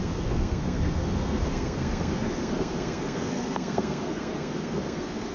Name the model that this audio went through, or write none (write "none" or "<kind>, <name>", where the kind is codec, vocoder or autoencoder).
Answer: codec, SNAC